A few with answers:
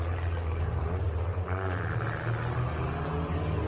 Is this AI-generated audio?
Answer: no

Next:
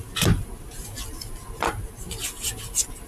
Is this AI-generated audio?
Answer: no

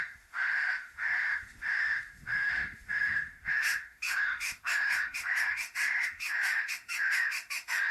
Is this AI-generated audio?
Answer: yes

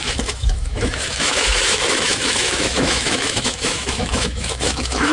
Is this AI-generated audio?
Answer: yes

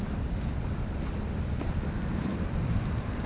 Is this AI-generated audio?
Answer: no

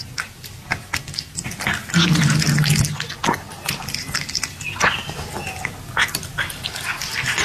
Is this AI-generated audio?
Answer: no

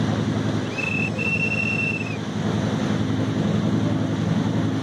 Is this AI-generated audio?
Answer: no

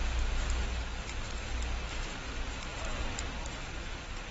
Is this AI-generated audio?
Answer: no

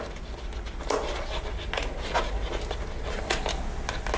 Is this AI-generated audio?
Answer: no